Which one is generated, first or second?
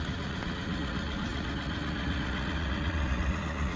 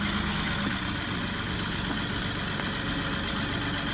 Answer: first